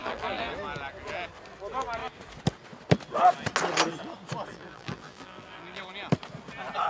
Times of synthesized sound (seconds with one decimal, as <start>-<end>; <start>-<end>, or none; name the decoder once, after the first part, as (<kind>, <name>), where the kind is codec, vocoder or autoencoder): 0.0-0.5 (vocoder, BigVGAN v2); 4.5-5.8